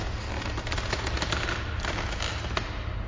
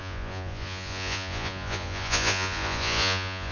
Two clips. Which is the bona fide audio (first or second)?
first